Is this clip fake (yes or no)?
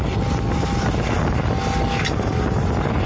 no